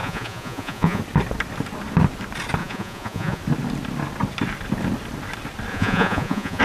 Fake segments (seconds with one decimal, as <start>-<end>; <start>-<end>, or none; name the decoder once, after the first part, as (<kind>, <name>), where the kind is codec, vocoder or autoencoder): 0.0-1.0 (vocoder, Vocos); 2.6-3.4; 5.7-6.6